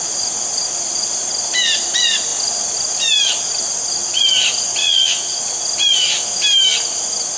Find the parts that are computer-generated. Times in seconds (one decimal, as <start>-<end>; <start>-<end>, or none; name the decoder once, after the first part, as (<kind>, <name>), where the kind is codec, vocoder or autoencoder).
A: 4.8-5.4 (vocoder, WaveNeXt)